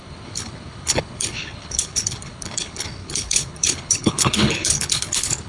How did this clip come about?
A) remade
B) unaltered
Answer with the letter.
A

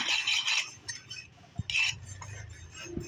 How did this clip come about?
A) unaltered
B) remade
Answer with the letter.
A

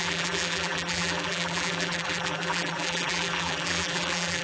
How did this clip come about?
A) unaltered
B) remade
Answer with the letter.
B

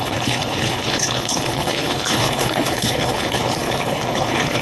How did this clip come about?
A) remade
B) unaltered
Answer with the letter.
A